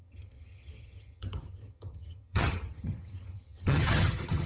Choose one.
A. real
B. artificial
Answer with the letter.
B